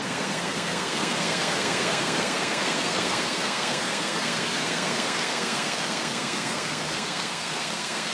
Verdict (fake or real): fake